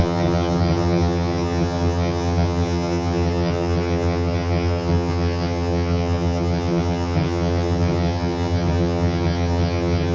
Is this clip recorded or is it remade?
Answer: remade